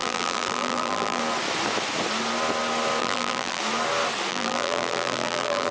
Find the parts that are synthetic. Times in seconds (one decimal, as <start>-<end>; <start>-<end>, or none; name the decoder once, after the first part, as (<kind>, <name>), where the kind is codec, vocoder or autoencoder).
0.0-1.2 (vocoder, BigVGAN v2); 3.0-3.6; 4.3-5.7